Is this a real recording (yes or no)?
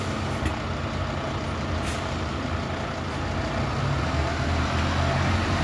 yes